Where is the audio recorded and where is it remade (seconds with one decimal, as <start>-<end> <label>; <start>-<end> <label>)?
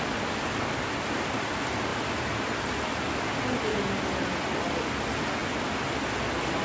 0.0-6.6 recorded